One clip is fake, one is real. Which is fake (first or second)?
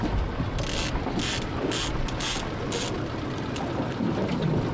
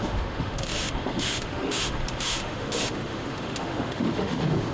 second